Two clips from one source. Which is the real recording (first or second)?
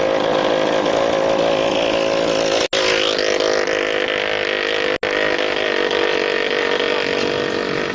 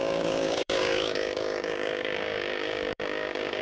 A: first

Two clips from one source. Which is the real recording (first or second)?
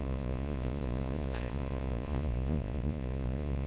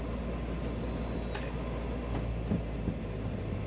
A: second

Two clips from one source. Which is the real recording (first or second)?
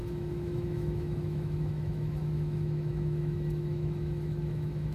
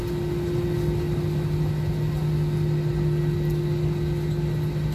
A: second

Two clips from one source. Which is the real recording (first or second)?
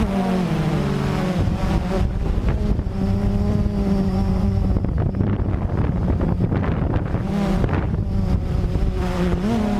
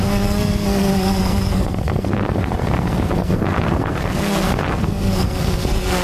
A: first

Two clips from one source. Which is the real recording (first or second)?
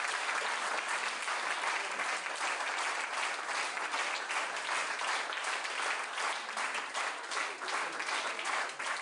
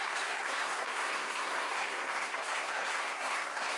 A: first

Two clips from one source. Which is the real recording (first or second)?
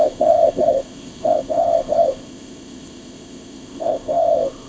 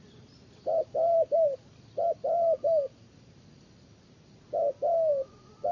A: second